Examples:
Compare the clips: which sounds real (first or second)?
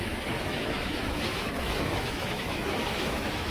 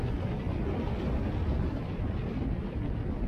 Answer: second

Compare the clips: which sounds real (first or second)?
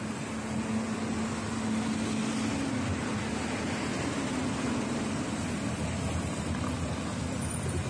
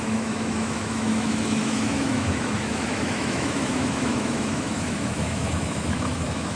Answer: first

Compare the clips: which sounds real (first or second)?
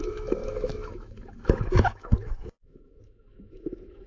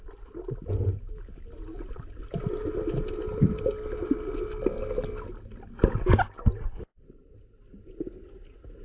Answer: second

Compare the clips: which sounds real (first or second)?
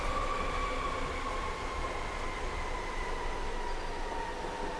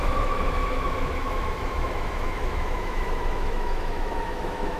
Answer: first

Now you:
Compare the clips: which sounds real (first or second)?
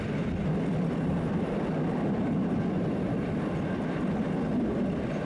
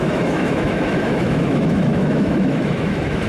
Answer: first